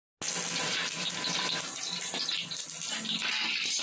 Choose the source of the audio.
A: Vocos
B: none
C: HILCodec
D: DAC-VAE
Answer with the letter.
B